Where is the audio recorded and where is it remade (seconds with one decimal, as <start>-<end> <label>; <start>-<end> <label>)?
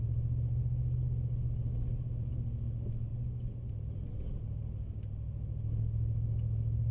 0.0-3.1 recorded; 3.1-3.7 remade; 3.7-6.9 recorded